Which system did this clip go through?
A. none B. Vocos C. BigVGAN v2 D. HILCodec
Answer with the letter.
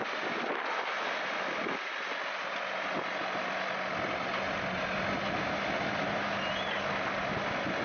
A